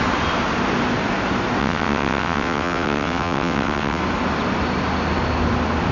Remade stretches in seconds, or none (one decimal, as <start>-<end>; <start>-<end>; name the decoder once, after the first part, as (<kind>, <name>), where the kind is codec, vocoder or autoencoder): 1.6-4.0 (vocoder, WaveNeXt)